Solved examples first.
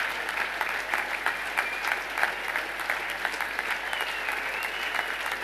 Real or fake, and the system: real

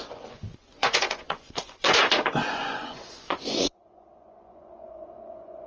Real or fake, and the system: fake, vocoder, Vocos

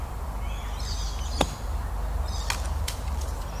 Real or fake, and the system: real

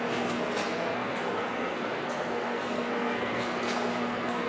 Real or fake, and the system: fake, codec, SNAC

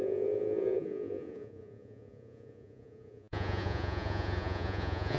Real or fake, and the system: fake, vocoder, Vocos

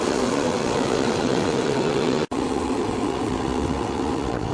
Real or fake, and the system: fake, vocoder, WaveNeXt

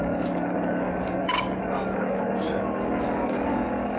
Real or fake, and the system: fake, codec, DAC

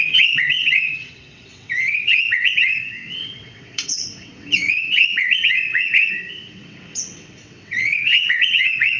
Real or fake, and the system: fake, vocoder, WaveNeXt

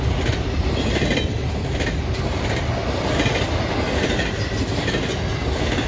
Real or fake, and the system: real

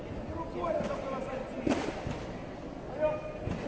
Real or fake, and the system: real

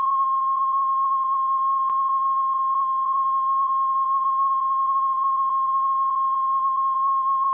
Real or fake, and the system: fake, vocoder, BigVGAN v2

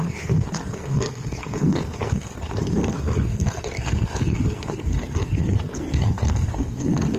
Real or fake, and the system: fake, codec, SNAC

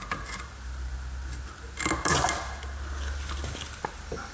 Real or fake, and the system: real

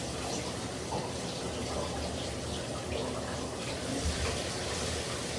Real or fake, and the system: real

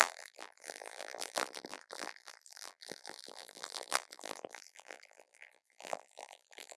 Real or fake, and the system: fake, vocoder, BigVGAN v2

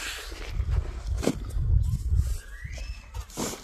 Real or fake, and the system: real